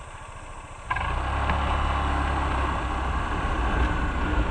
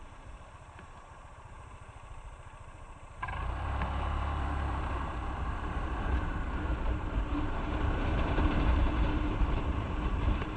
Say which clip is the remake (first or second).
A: second